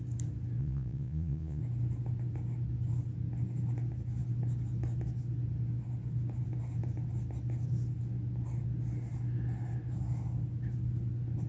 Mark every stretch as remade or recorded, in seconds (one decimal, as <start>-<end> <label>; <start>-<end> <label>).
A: 0.0-0.6 recorded; 0.6-1.6 remade; 1.6-11.5 recorded